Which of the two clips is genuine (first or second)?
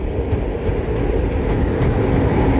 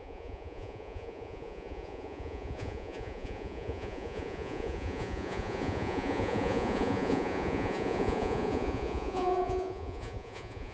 first